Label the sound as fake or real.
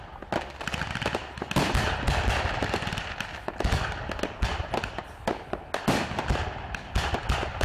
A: real